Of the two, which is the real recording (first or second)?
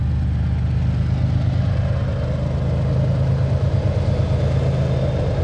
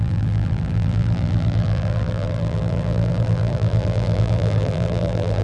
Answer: first